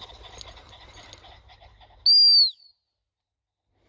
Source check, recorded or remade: recorded